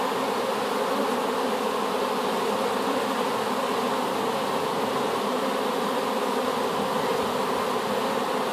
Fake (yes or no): no